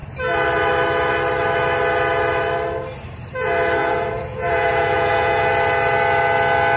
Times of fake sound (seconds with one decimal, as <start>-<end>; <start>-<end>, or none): 3.8-5.5